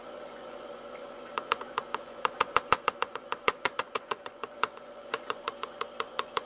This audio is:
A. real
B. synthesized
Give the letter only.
B